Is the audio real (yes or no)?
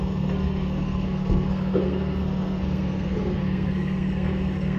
no